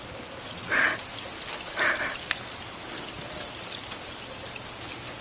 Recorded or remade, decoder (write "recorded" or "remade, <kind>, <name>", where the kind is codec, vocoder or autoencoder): recorded